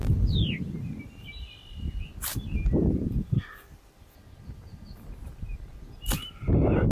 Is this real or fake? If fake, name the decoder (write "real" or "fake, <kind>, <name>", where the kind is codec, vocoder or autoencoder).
real